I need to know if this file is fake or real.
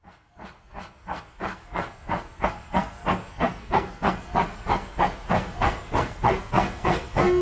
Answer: fake